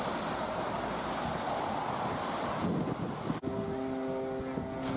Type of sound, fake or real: real